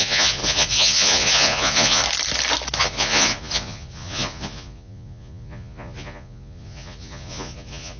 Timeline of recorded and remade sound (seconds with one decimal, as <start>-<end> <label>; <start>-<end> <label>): 0.0-2.0 remade; 2.0-2.8 recorded; 2.8-8.0 remade